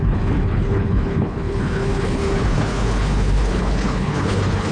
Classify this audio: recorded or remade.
remade